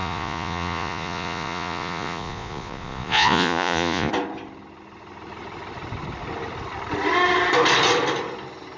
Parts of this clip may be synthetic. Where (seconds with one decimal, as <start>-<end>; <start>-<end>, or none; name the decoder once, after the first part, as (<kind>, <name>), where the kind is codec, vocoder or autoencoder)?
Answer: 0.0-4.1 (vocoder, Vocos)